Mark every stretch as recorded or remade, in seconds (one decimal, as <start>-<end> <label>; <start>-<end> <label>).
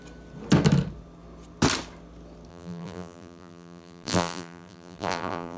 0.0-2.5 recorded; 2.5-5.6 remade